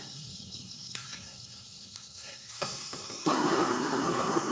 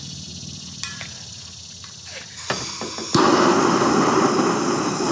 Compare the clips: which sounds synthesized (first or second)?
first